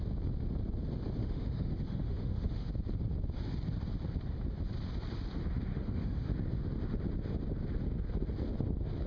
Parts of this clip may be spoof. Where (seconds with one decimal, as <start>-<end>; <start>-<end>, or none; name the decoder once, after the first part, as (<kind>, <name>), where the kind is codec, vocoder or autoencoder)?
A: 1.2-2.7 (autoencoder, DAC-VAE); 5.7-6.3